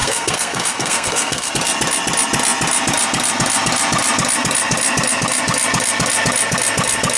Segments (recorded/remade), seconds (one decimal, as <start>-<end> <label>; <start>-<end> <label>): 0.0-1.5 remade; 1.5-7.2 recorded